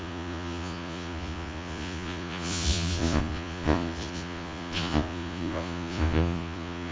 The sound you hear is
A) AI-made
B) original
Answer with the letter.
A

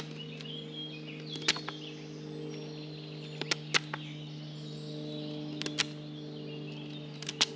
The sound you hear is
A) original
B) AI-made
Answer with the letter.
A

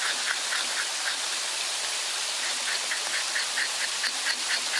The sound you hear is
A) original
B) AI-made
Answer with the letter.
A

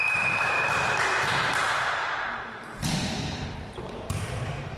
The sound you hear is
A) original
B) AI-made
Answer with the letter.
B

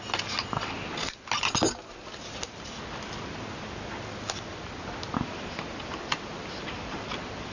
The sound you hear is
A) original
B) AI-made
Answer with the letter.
A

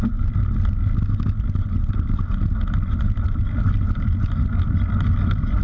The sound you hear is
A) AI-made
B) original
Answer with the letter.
B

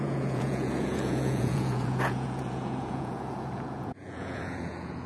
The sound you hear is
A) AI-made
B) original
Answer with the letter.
A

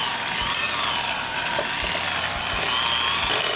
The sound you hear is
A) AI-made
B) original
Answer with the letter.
B